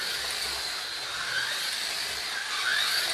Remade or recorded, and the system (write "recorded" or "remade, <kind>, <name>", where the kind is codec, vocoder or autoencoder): recorded